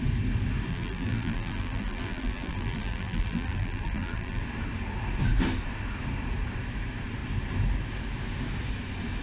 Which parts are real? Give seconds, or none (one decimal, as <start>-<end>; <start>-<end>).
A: 0.0-0.7; 4.4-9.2